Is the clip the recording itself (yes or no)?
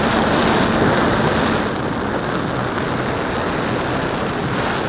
yes